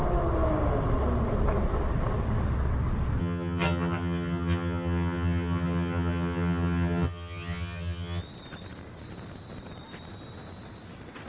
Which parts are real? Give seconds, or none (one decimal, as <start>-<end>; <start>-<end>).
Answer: 0.0-3.2; 8.2-11.3